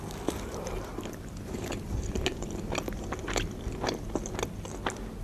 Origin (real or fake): real